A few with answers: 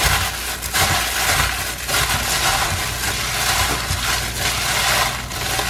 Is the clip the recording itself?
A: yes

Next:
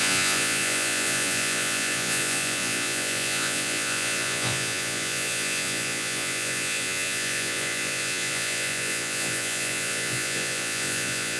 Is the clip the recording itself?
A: no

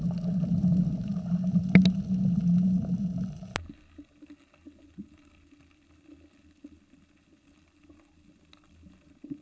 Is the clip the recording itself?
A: yes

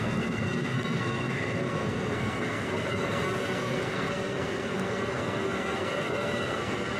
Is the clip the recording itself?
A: no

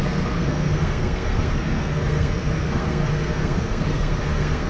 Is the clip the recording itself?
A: no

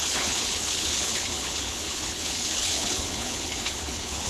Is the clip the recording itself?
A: no